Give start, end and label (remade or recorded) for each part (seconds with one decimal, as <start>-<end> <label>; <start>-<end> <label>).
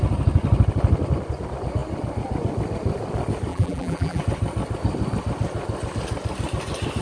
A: 0.0-3.5 recorded; 3.5-4.2 remade; 4.2-7.0 recorded